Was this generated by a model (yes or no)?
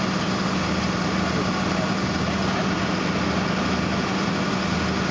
no